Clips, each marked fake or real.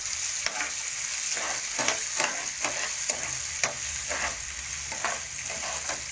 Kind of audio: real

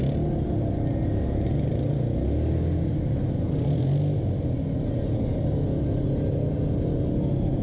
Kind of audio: real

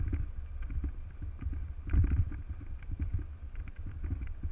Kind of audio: real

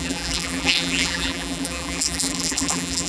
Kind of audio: fake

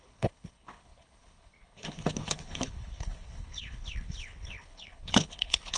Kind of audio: fake